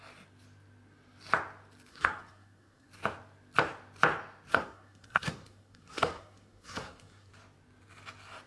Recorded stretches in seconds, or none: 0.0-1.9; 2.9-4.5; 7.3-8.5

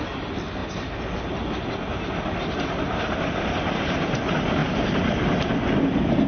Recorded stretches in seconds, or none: 0.0-4.6; 5.5-6.3

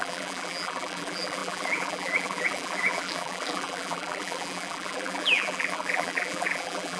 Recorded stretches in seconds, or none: none

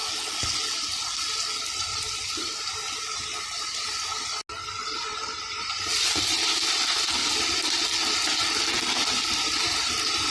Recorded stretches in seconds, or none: 0.0-10.3

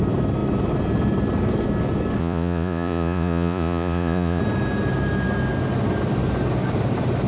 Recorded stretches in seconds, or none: 0.0-2.2; 4.4-7.3

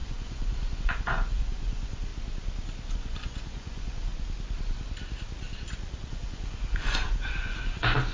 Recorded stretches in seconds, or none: 2.1-2.9; 4.1-6.1

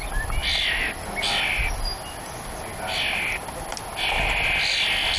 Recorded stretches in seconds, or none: 0.0-5.2